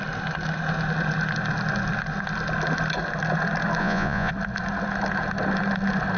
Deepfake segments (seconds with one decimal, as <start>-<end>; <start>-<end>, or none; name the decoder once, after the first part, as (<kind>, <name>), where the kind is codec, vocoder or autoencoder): 3.8-4.3 (vocoder, Vocos)

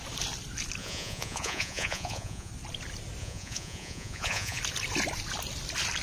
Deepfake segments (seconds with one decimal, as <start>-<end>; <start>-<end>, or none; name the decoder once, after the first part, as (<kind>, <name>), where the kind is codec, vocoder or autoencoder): 0.8-2.5 (vocoder, Vocos); 3.2-4.6

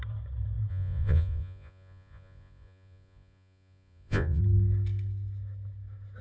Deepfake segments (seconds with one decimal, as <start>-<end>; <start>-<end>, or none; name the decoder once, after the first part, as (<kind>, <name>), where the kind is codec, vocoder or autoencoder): 0.7-4.4 (vocoder, Vocos)

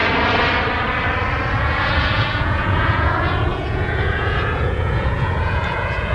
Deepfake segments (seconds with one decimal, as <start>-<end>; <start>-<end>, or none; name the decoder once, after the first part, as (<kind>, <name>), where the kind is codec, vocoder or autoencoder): 1.6-6.1 (vocoder, Vocos)

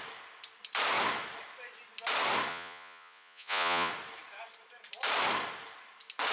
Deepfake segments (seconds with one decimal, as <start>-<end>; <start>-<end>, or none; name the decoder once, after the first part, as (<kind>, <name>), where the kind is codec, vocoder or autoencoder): 2.5-3.9 (vocoder, Vocos)

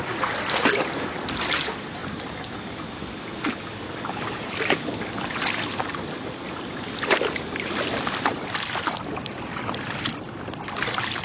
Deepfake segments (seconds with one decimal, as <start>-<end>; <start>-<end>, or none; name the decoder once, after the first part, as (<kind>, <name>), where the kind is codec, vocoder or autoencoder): none

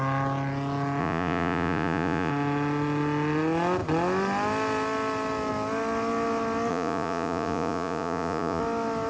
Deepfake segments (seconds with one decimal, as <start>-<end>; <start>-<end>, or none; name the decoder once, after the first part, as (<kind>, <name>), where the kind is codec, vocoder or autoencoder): 1.0-2.3 (vocoder, Vocos); 6.7-8.6